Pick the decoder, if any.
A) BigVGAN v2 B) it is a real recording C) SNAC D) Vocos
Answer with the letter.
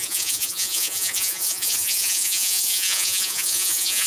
D